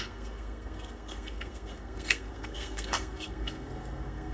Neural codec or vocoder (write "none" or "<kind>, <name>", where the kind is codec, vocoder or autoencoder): codec, SNAC